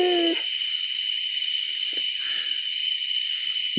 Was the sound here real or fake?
real